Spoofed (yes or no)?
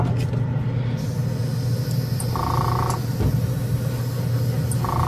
no